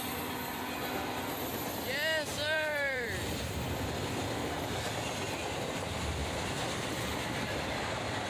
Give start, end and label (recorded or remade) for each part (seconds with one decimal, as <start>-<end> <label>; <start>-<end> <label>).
0.0-2.3 recorded; 2.3-4.9 remade; 4.9-8.3 recorded